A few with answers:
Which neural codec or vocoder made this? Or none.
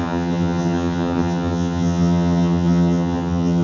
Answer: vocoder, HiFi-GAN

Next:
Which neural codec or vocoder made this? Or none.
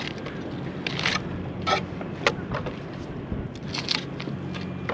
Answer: none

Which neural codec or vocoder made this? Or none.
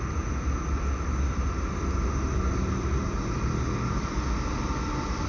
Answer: none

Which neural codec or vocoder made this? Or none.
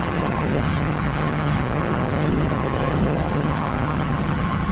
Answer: vocoder, HiFi-GAN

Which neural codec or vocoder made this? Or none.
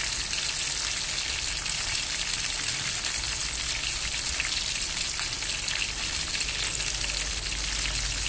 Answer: none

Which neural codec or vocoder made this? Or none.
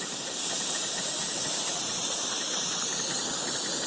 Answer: none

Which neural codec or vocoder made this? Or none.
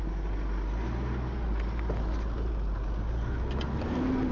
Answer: none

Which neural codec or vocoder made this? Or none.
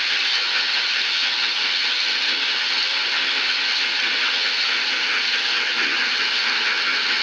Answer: vocoder, HiFi-GAN